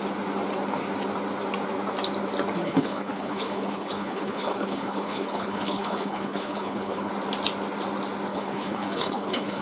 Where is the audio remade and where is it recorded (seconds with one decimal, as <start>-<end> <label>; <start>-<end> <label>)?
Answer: 0.0-2.6 recorded; 2.6-7.1 remade; 7.1-8.3 recorded; 8.3-9.6 remade